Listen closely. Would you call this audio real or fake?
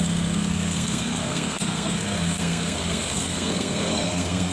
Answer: fake